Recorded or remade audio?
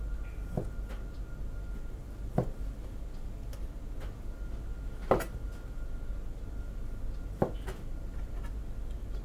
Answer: recorded